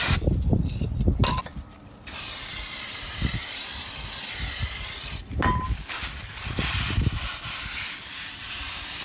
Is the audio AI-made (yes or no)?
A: yes